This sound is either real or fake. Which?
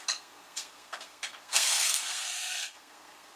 fake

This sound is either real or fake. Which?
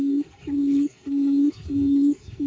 fake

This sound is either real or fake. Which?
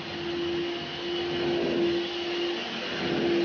real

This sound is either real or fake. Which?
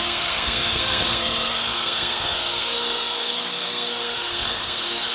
fake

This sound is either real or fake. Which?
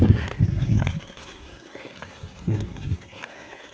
fake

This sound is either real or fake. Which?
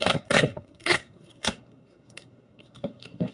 fake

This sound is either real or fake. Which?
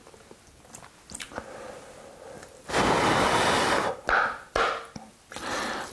real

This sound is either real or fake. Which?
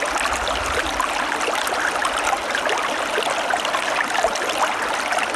real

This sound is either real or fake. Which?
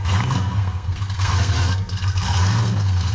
fake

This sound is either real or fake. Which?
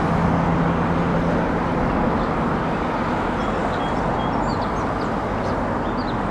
real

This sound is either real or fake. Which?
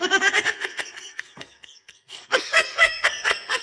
fake